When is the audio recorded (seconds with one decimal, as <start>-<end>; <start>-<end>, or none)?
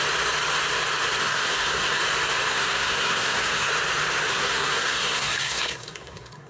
0.0-1.2; 2.0-2.5; 3.7-4.3